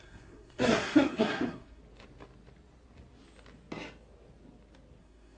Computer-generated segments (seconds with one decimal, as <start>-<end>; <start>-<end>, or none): 0.0-1.8; 5.0-5.4

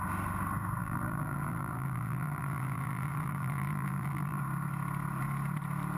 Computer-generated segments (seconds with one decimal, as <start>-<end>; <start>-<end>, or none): 0.8-4.4

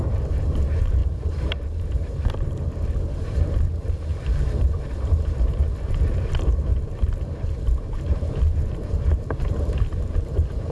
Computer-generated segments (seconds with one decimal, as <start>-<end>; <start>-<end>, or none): 0.0-10.7

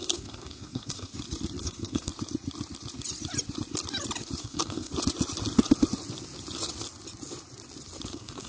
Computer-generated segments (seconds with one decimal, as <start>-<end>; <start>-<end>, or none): 0.0-1.1; 1.6-2.1; 4.4-4.9; 8.1-8.5

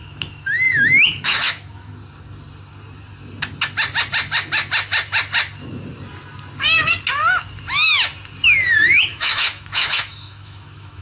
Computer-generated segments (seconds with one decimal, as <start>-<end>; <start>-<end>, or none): 0.0-2.0; 9.1-11.0